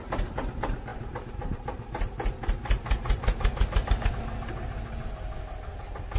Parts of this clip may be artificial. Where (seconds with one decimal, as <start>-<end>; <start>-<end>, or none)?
0.9-4.1